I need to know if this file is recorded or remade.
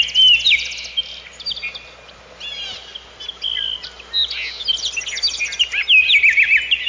recorded